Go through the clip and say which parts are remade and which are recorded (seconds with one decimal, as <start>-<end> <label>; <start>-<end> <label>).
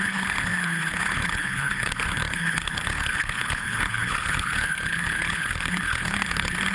0.0-6.7 remade